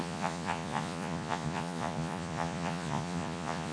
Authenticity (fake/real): fake